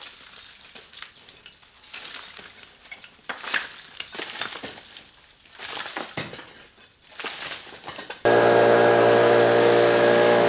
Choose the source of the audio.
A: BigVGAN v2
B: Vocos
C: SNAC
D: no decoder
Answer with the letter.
D